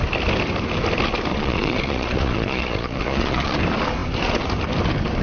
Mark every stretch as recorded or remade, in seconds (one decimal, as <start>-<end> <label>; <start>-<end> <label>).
0.0-1.3 recorded; 1.3-3.6 remade; 3.6-5.2 recorded